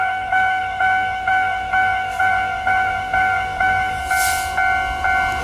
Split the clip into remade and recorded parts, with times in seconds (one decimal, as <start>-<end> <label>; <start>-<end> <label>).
0.0-4.0 remade; 4.0-5.4 recorded